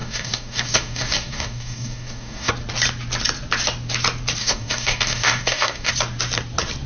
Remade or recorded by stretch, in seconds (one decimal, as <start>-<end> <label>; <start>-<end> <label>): 0.0-2.5 remade; 2.5-4.4 recorded; 4.4-5.9 remade; 5.9-6.9 recorded